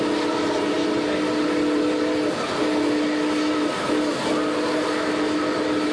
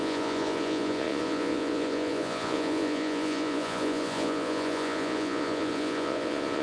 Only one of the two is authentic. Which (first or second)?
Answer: first